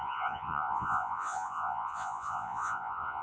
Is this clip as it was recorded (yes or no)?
no